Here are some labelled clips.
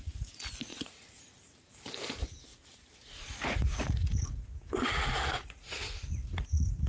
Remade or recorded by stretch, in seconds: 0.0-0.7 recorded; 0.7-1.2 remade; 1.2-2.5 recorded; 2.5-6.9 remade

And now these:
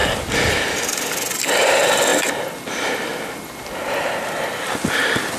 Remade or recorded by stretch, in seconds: 0.0-5.4 recorded

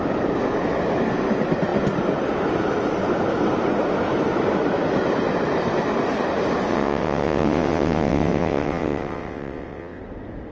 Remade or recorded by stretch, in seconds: 0.0-6.7 recorded; 6.7-10.0 remade; 10.0-10.5 recorded

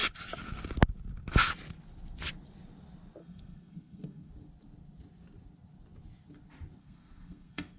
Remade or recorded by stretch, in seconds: 0.0-3.2 recorded; 3.2-4.3 remade; 4.3-6.8 recorded; 6.8-7.8 remade

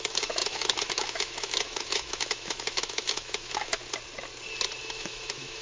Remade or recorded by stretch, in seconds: 0.0-3.8 remade; 3.8-4.8 recorded; 4.8-5.6 remade

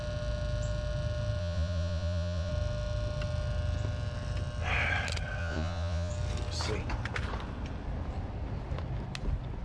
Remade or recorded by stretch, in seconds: 0.0-1.4 recorded; 1.4-2.5 remade; 2.5-5.4 recorded; 5.4-6.1 remade; 6.1-9.6 recorded

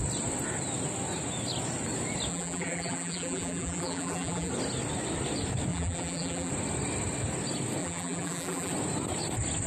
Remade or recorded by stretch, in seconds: 0.0-2.3 recorded; 2.3-4.5 remade; 4.5-5.7 recorded; 5.7-6.5 remade; 6.5-7.8 recorded; 7.8-8.7 remade; 8.7-9.7 recorded

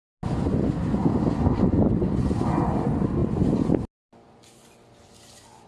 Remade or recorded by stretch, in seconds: 0.0-5.7 recorded